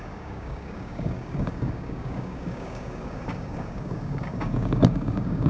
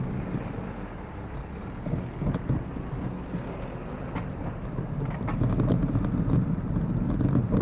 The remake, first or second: first